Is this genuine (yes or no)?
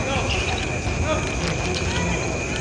yes